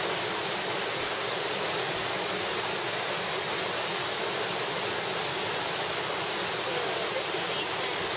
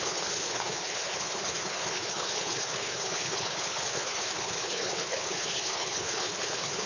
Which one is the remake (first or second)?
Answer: second